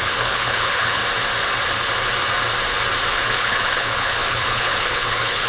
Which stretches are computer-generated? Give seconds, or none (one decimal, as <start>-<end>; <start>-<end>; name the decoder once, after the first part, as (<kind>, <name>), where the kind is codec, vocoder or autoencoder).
0.0-1.0 (codec, HILCodec); 3.1-5.5